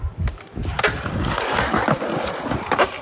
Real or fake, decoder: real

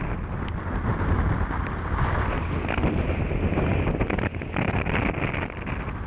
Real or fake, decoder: real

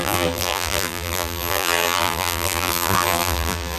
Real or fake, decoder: fake, vocoder, BigVGAN v2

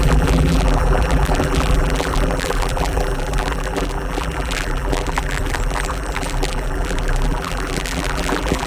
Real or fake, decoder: fake, vocoder, BigVGAN v2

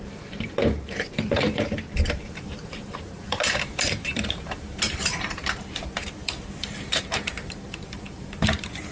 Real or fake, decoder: fake, vocoder, BigVGAN v2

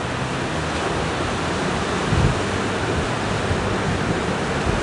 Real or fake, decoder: real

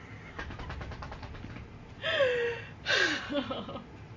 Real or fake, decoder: real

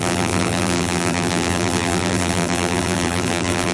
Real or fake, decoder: fake, vocoder, BigVGAN v2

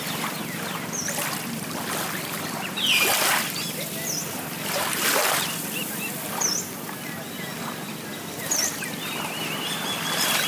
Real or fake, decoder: fake, vocoder, BigVGAN v2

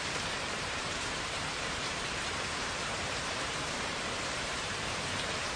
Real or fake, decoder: fake, vocoder, BigVGAN v2